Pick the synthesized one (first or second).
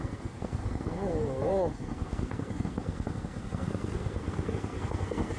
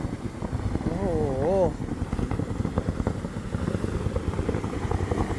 first